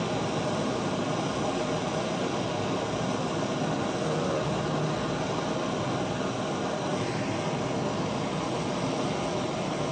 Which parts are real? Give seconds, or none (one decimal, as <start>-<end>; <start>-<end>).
0.0-9.9